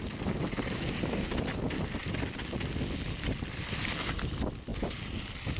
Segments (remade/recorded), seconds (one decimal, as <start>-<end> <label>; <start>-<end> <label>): 0.0-5.6 recorded

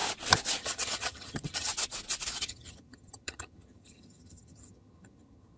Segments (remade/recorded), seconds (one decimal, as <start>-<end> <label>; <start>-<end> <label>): 0.0-0.6 recorded; 0.6-1.7 remade; 1.7-2.4 recorded; 2.4-5.6 remade

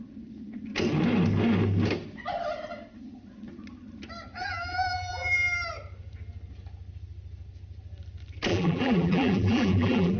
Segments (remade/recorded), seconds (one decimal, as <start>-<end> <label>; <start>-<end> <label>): 0.0-4.4 recorded; 4.4-5.3 remade; 5.3-8.5 recorded; 8.5-10.2 remade

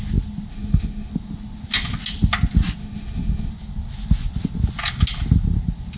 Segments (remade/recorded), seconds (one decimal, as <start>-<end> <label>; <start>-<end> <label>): 0.0-0.5 recorded; 0.5-1.1 remade; 1.1-2.8 recorded; 2.8-3.5 remade; 3.5-6.0 recorded

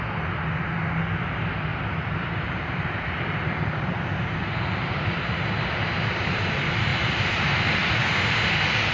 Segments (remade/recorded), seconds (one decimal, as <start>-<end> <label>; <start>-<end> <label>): 0.0-1.7 recorded; 1.7-5.5 remade; 5.5-6.9 recorded; 6.9-7.5 remade; 7.5-8.9 recorded